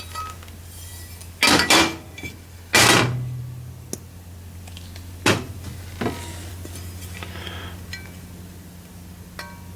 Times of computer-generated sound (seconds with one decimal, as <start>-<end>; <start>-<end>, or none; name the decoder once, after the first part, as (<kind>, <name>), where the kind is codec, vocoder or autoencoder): none